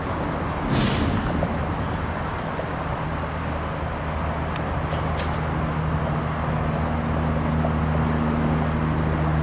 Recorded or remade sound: recorded